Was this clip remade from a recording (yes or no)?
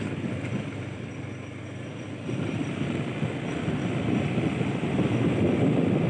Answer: no